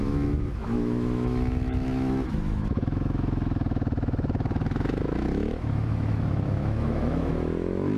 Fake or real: fake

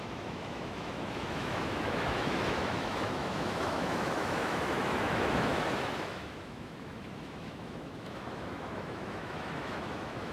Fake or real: fake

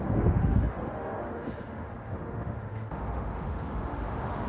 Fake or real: fake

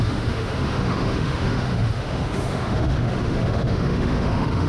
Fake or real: fake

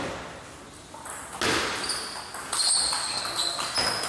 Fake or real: real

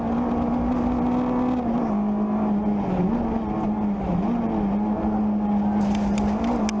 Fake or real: real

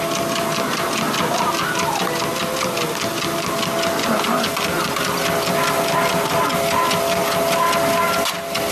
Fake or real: real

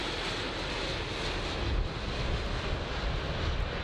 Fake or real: real